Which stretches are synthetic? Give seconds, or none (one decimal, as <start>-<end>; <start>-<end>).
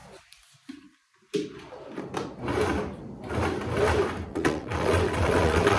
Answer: 4.3-5.8